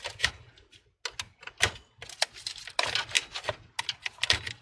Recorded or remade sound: recorded